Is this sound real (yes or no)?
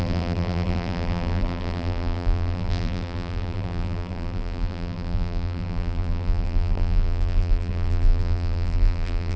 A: no